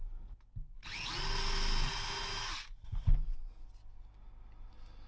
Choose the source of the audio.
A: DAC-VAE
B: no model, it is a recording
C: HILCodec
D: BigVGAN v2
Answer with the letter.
B